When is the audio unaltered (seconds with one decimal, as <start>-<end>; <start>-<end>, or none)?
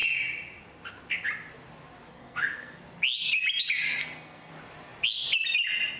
0.0-2.1; 2.8-4.0; 4.5-6.0